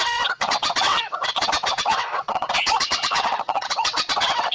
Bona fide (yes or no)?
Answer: no